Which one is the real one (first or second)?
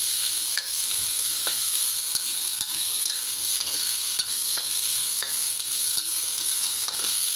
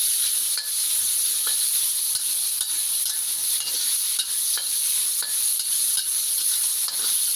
second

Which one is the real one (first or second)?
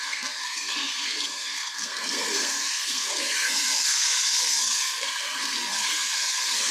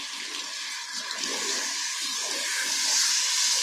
second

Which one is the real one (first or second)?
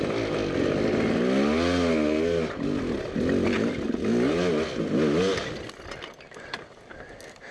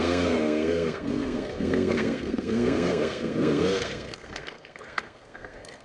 first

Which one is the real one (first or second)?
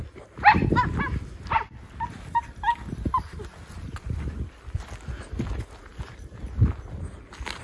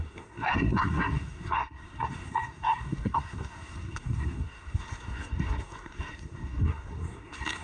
first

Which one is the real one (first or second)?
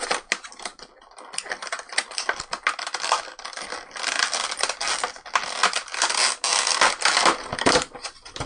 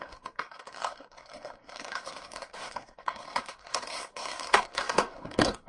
first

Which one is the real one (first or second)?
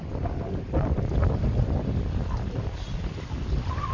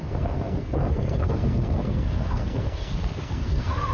first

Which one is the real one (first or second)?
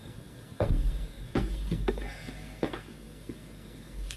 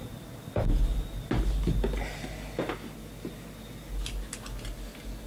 second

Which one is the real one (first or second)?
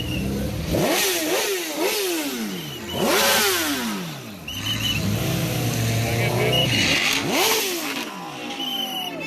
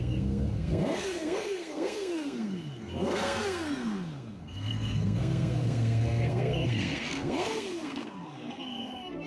first